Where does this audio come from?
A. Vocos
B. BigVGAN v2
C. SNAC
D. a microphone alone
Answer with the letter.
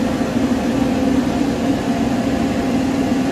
D